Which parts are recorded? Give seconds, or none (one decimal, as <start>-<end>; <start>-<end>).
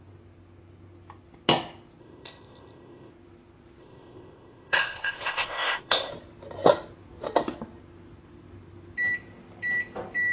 0.0-2.0; 3.1-3.8; 6.1-10.3